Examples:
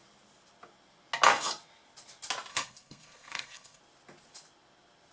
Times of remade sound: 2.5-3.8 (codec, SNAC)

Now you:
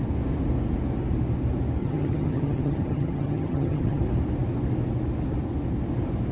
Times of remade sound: 1.8-4.0 (vocoder, HiFi-GAN)

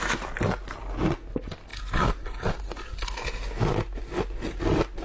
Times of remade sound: none

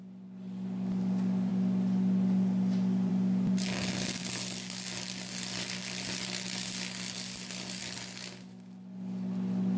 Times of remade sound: none

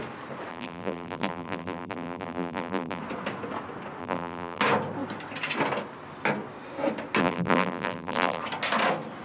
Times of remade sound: 0.5-3.0 (vocoder, BigVGAN v2); 4.0-4.6; 7.2-8.4